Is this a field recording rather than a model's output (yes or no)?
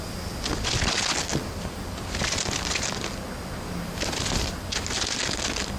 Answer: yes